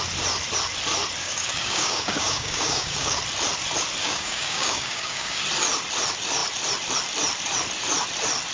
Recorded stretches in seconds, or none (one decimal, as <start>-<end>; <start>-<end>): 0.0-1.2; 3.2-4.0; 5.4-8.5